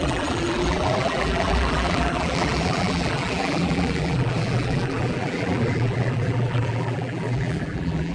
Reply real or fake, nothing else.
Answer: fake